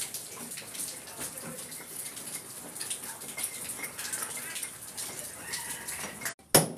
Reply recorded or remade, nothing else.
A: recorded